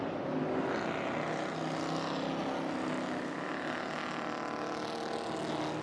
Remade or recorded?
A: recorded